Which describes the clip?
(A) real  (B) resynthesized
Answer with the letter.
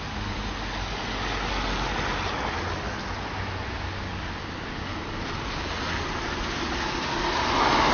A